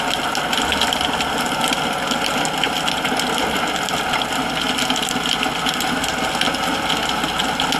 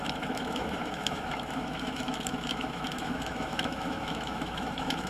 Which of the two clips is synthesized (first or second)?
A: second